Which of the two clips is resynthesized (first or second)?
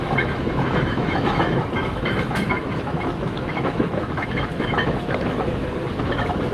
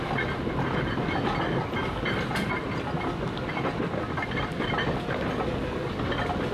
first